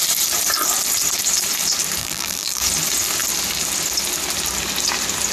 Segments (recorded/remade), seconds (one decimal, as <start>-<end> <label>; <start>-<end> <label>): 0.0-2.0 recorded; 2.0-2.6 remade; 2.6-5.3 recorded